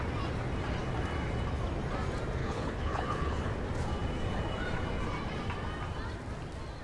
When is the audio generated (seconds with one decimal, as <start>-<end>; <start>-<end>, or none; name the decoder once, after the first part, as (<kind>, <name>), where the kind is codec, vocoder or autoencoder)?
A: 2.4-3.5 (codec, HILCodec)